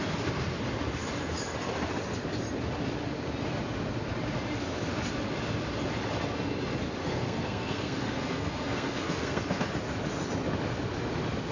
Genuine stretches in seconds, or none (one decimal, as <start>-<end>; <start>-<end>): 0.0-7.0; 9.6-11.5